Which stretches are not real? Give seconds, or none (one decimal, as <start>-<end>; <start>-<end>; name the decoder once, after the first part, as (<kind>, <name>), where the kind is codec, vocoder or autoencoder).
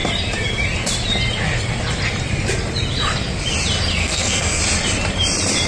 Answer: 4.0-4.6 (codec, SNAC)